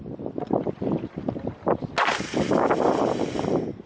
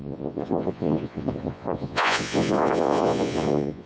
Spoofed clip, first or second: second